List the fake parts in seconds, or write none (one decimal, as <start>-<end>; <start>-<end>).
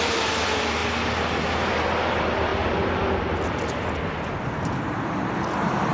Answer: none